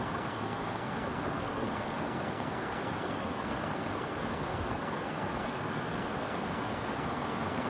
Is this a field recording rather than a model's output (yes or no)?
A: no